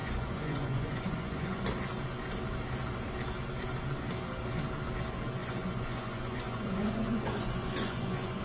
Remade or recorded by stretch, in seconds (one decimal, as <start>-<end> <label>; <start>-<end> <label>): 0.0-1.6 remade; 1.6-5.4 recorded; 5.4-8.4 remade